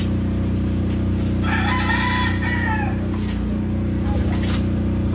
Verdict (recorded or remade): recorded